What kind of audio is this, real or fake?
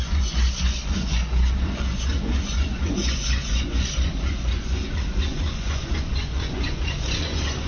fake